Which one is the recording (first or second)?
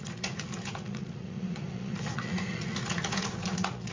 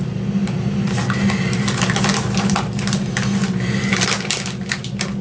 second